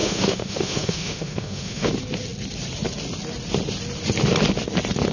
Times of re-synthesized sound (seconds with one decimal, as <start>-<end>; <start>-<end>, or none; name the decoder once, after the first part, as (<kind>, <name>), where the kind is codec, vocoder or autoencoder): 0.0-1.9 (autoencoder, DAC-VAE)